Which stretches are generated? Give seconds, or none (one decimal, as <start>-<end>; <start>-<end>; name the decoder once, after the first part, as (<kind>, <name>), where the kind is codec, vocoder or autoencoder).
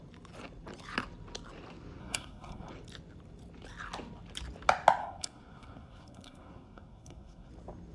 2.0-2.7 (codec, SNAC); 5.0-7.5